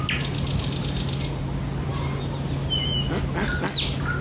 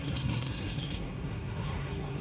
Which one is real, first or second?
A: first